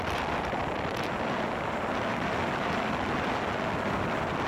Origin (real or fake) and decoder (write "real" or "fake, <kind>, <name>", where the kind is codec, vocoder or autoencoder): real